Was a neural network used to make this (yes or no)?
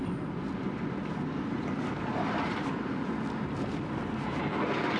no